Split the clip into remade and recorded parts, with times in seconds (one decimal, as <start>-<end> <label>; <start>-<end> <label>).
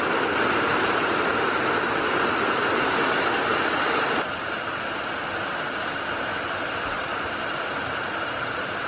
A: 0.0-1.3 remade; 1.3-2.8 recorded; 2.8-3.5 remade; 3.5-4.5 recorded; 4.5-8.9 remade